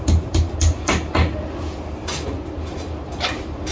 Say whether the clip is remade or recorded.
recorded